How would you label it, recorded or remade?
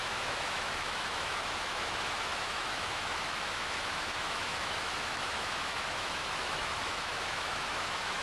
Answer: remade